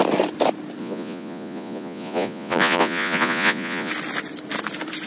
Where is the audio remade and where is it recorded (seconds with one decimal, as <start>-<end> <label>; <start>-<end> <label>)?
0.0-0.8 recorded; 0.8-3.9 remade; 3.9-5.1 recorded